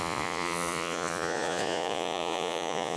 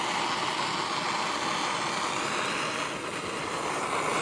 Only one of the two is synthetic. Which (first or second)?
first